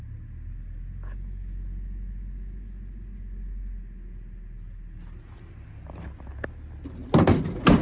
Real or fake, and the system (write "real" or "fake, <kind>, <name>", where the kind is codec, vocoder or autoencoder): real